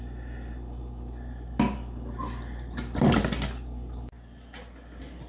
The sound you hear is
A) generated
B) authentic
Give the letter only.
B